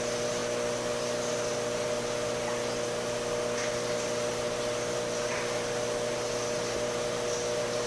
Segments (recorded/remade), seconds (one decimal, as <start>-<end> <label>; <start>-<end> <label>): 0.0-7.9 recorded

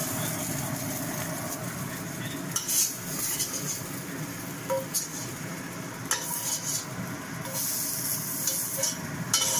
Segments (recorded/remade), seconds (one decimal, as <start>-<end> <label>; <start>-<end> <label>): 0.0-5.1 recorded; 5.1-6.1 remade; 6.1-9.6 recorded

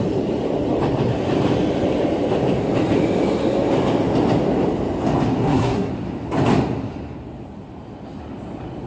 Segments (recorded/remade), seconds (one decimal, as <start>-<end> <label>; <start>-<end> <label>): 0.0-5.4 recorded; 5.4-5.9 remade; 5.9-8.9 recorded

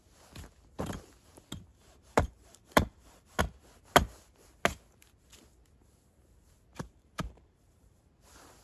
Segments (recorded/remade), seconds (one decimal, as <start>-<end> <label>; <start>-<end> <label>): 0.0-1.7 recorded; 1.7-3.4 remade; 3.4-6.7 recorded; 6.7-8.0 remade; 8.0-8.6 recorded